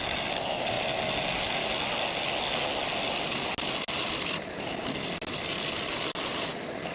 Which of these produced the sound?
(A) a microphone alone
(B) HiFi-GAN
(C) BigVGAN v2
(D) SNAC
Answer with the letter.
A